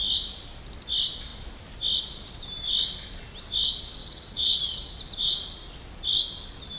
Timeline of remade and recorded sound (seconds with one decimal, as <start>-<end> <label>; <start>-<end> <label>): 0.0-4.0 recorded; 4.0-4.9 remade; 4.9-6.8 recorded

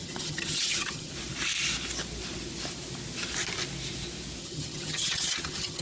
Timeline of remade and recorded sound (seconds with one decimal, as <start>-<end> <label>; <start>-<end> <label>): 0.0-1.1 remade; 1.1-4.4 recorded; 4.4-5.8 remade

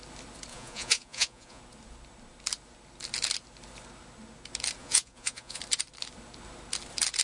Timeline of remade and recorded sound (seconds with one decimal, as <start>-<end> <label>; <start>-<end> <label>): 0.0-0.5 recorded; 0.5-1.6 remade; 1.6-4.8 recorded; 4.8-5.6 remade; 5.6-7.2 recorded

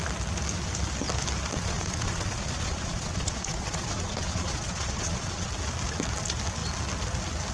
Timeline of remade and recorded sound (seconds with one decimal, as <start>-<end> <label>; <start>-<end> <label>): 0.0-1.5 recorded; 1.5-5.5 remade; 5.5-7.5 recorded

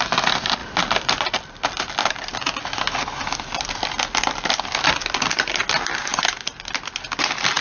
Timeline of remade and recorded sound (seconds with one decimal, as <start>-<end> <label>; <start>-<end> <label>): 0.0-7.6 recorded

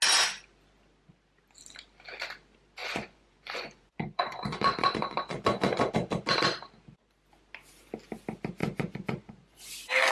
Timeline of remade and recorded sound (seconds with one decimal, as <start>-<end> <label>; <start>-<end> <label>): 0.0-2.8 recorded; 2.8-5.9 remade; 5.9-8.6 recorded; 8.6-9.7 remade; 9.7-10.1 recorded

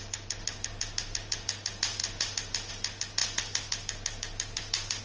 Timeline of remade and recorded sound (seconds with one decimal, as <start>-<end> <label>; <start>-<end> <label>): 0.0-5.0 recorded

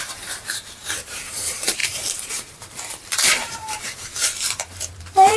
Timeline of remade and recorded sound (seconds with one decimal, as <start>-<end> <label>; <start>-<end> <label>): 0.0-5.4 remade